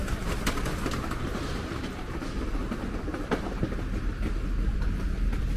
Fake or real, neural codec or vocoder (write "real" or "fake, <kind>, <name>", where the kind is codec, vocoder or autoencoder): real